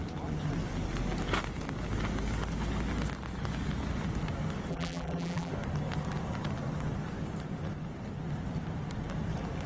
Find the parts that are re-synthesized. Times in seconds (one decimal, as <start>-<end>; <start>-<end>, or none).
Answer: 4.7-5.5